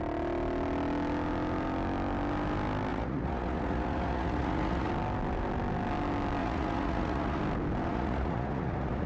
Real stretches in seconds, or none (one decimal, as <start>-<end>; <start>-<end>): 0.0-2.9; 4.9-6.4; 7.4-7.9